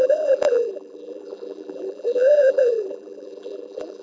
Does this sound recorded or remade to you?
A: remade